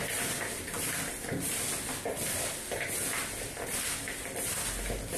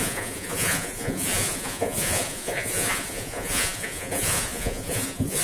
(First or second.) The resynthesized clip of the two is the second